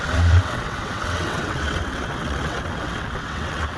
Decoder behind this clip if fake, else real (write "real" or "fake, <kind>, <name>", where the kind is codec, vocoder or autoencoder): fake, vocoder, WaveNeXt